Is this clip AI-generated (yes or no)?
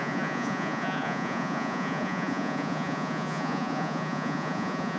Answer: yes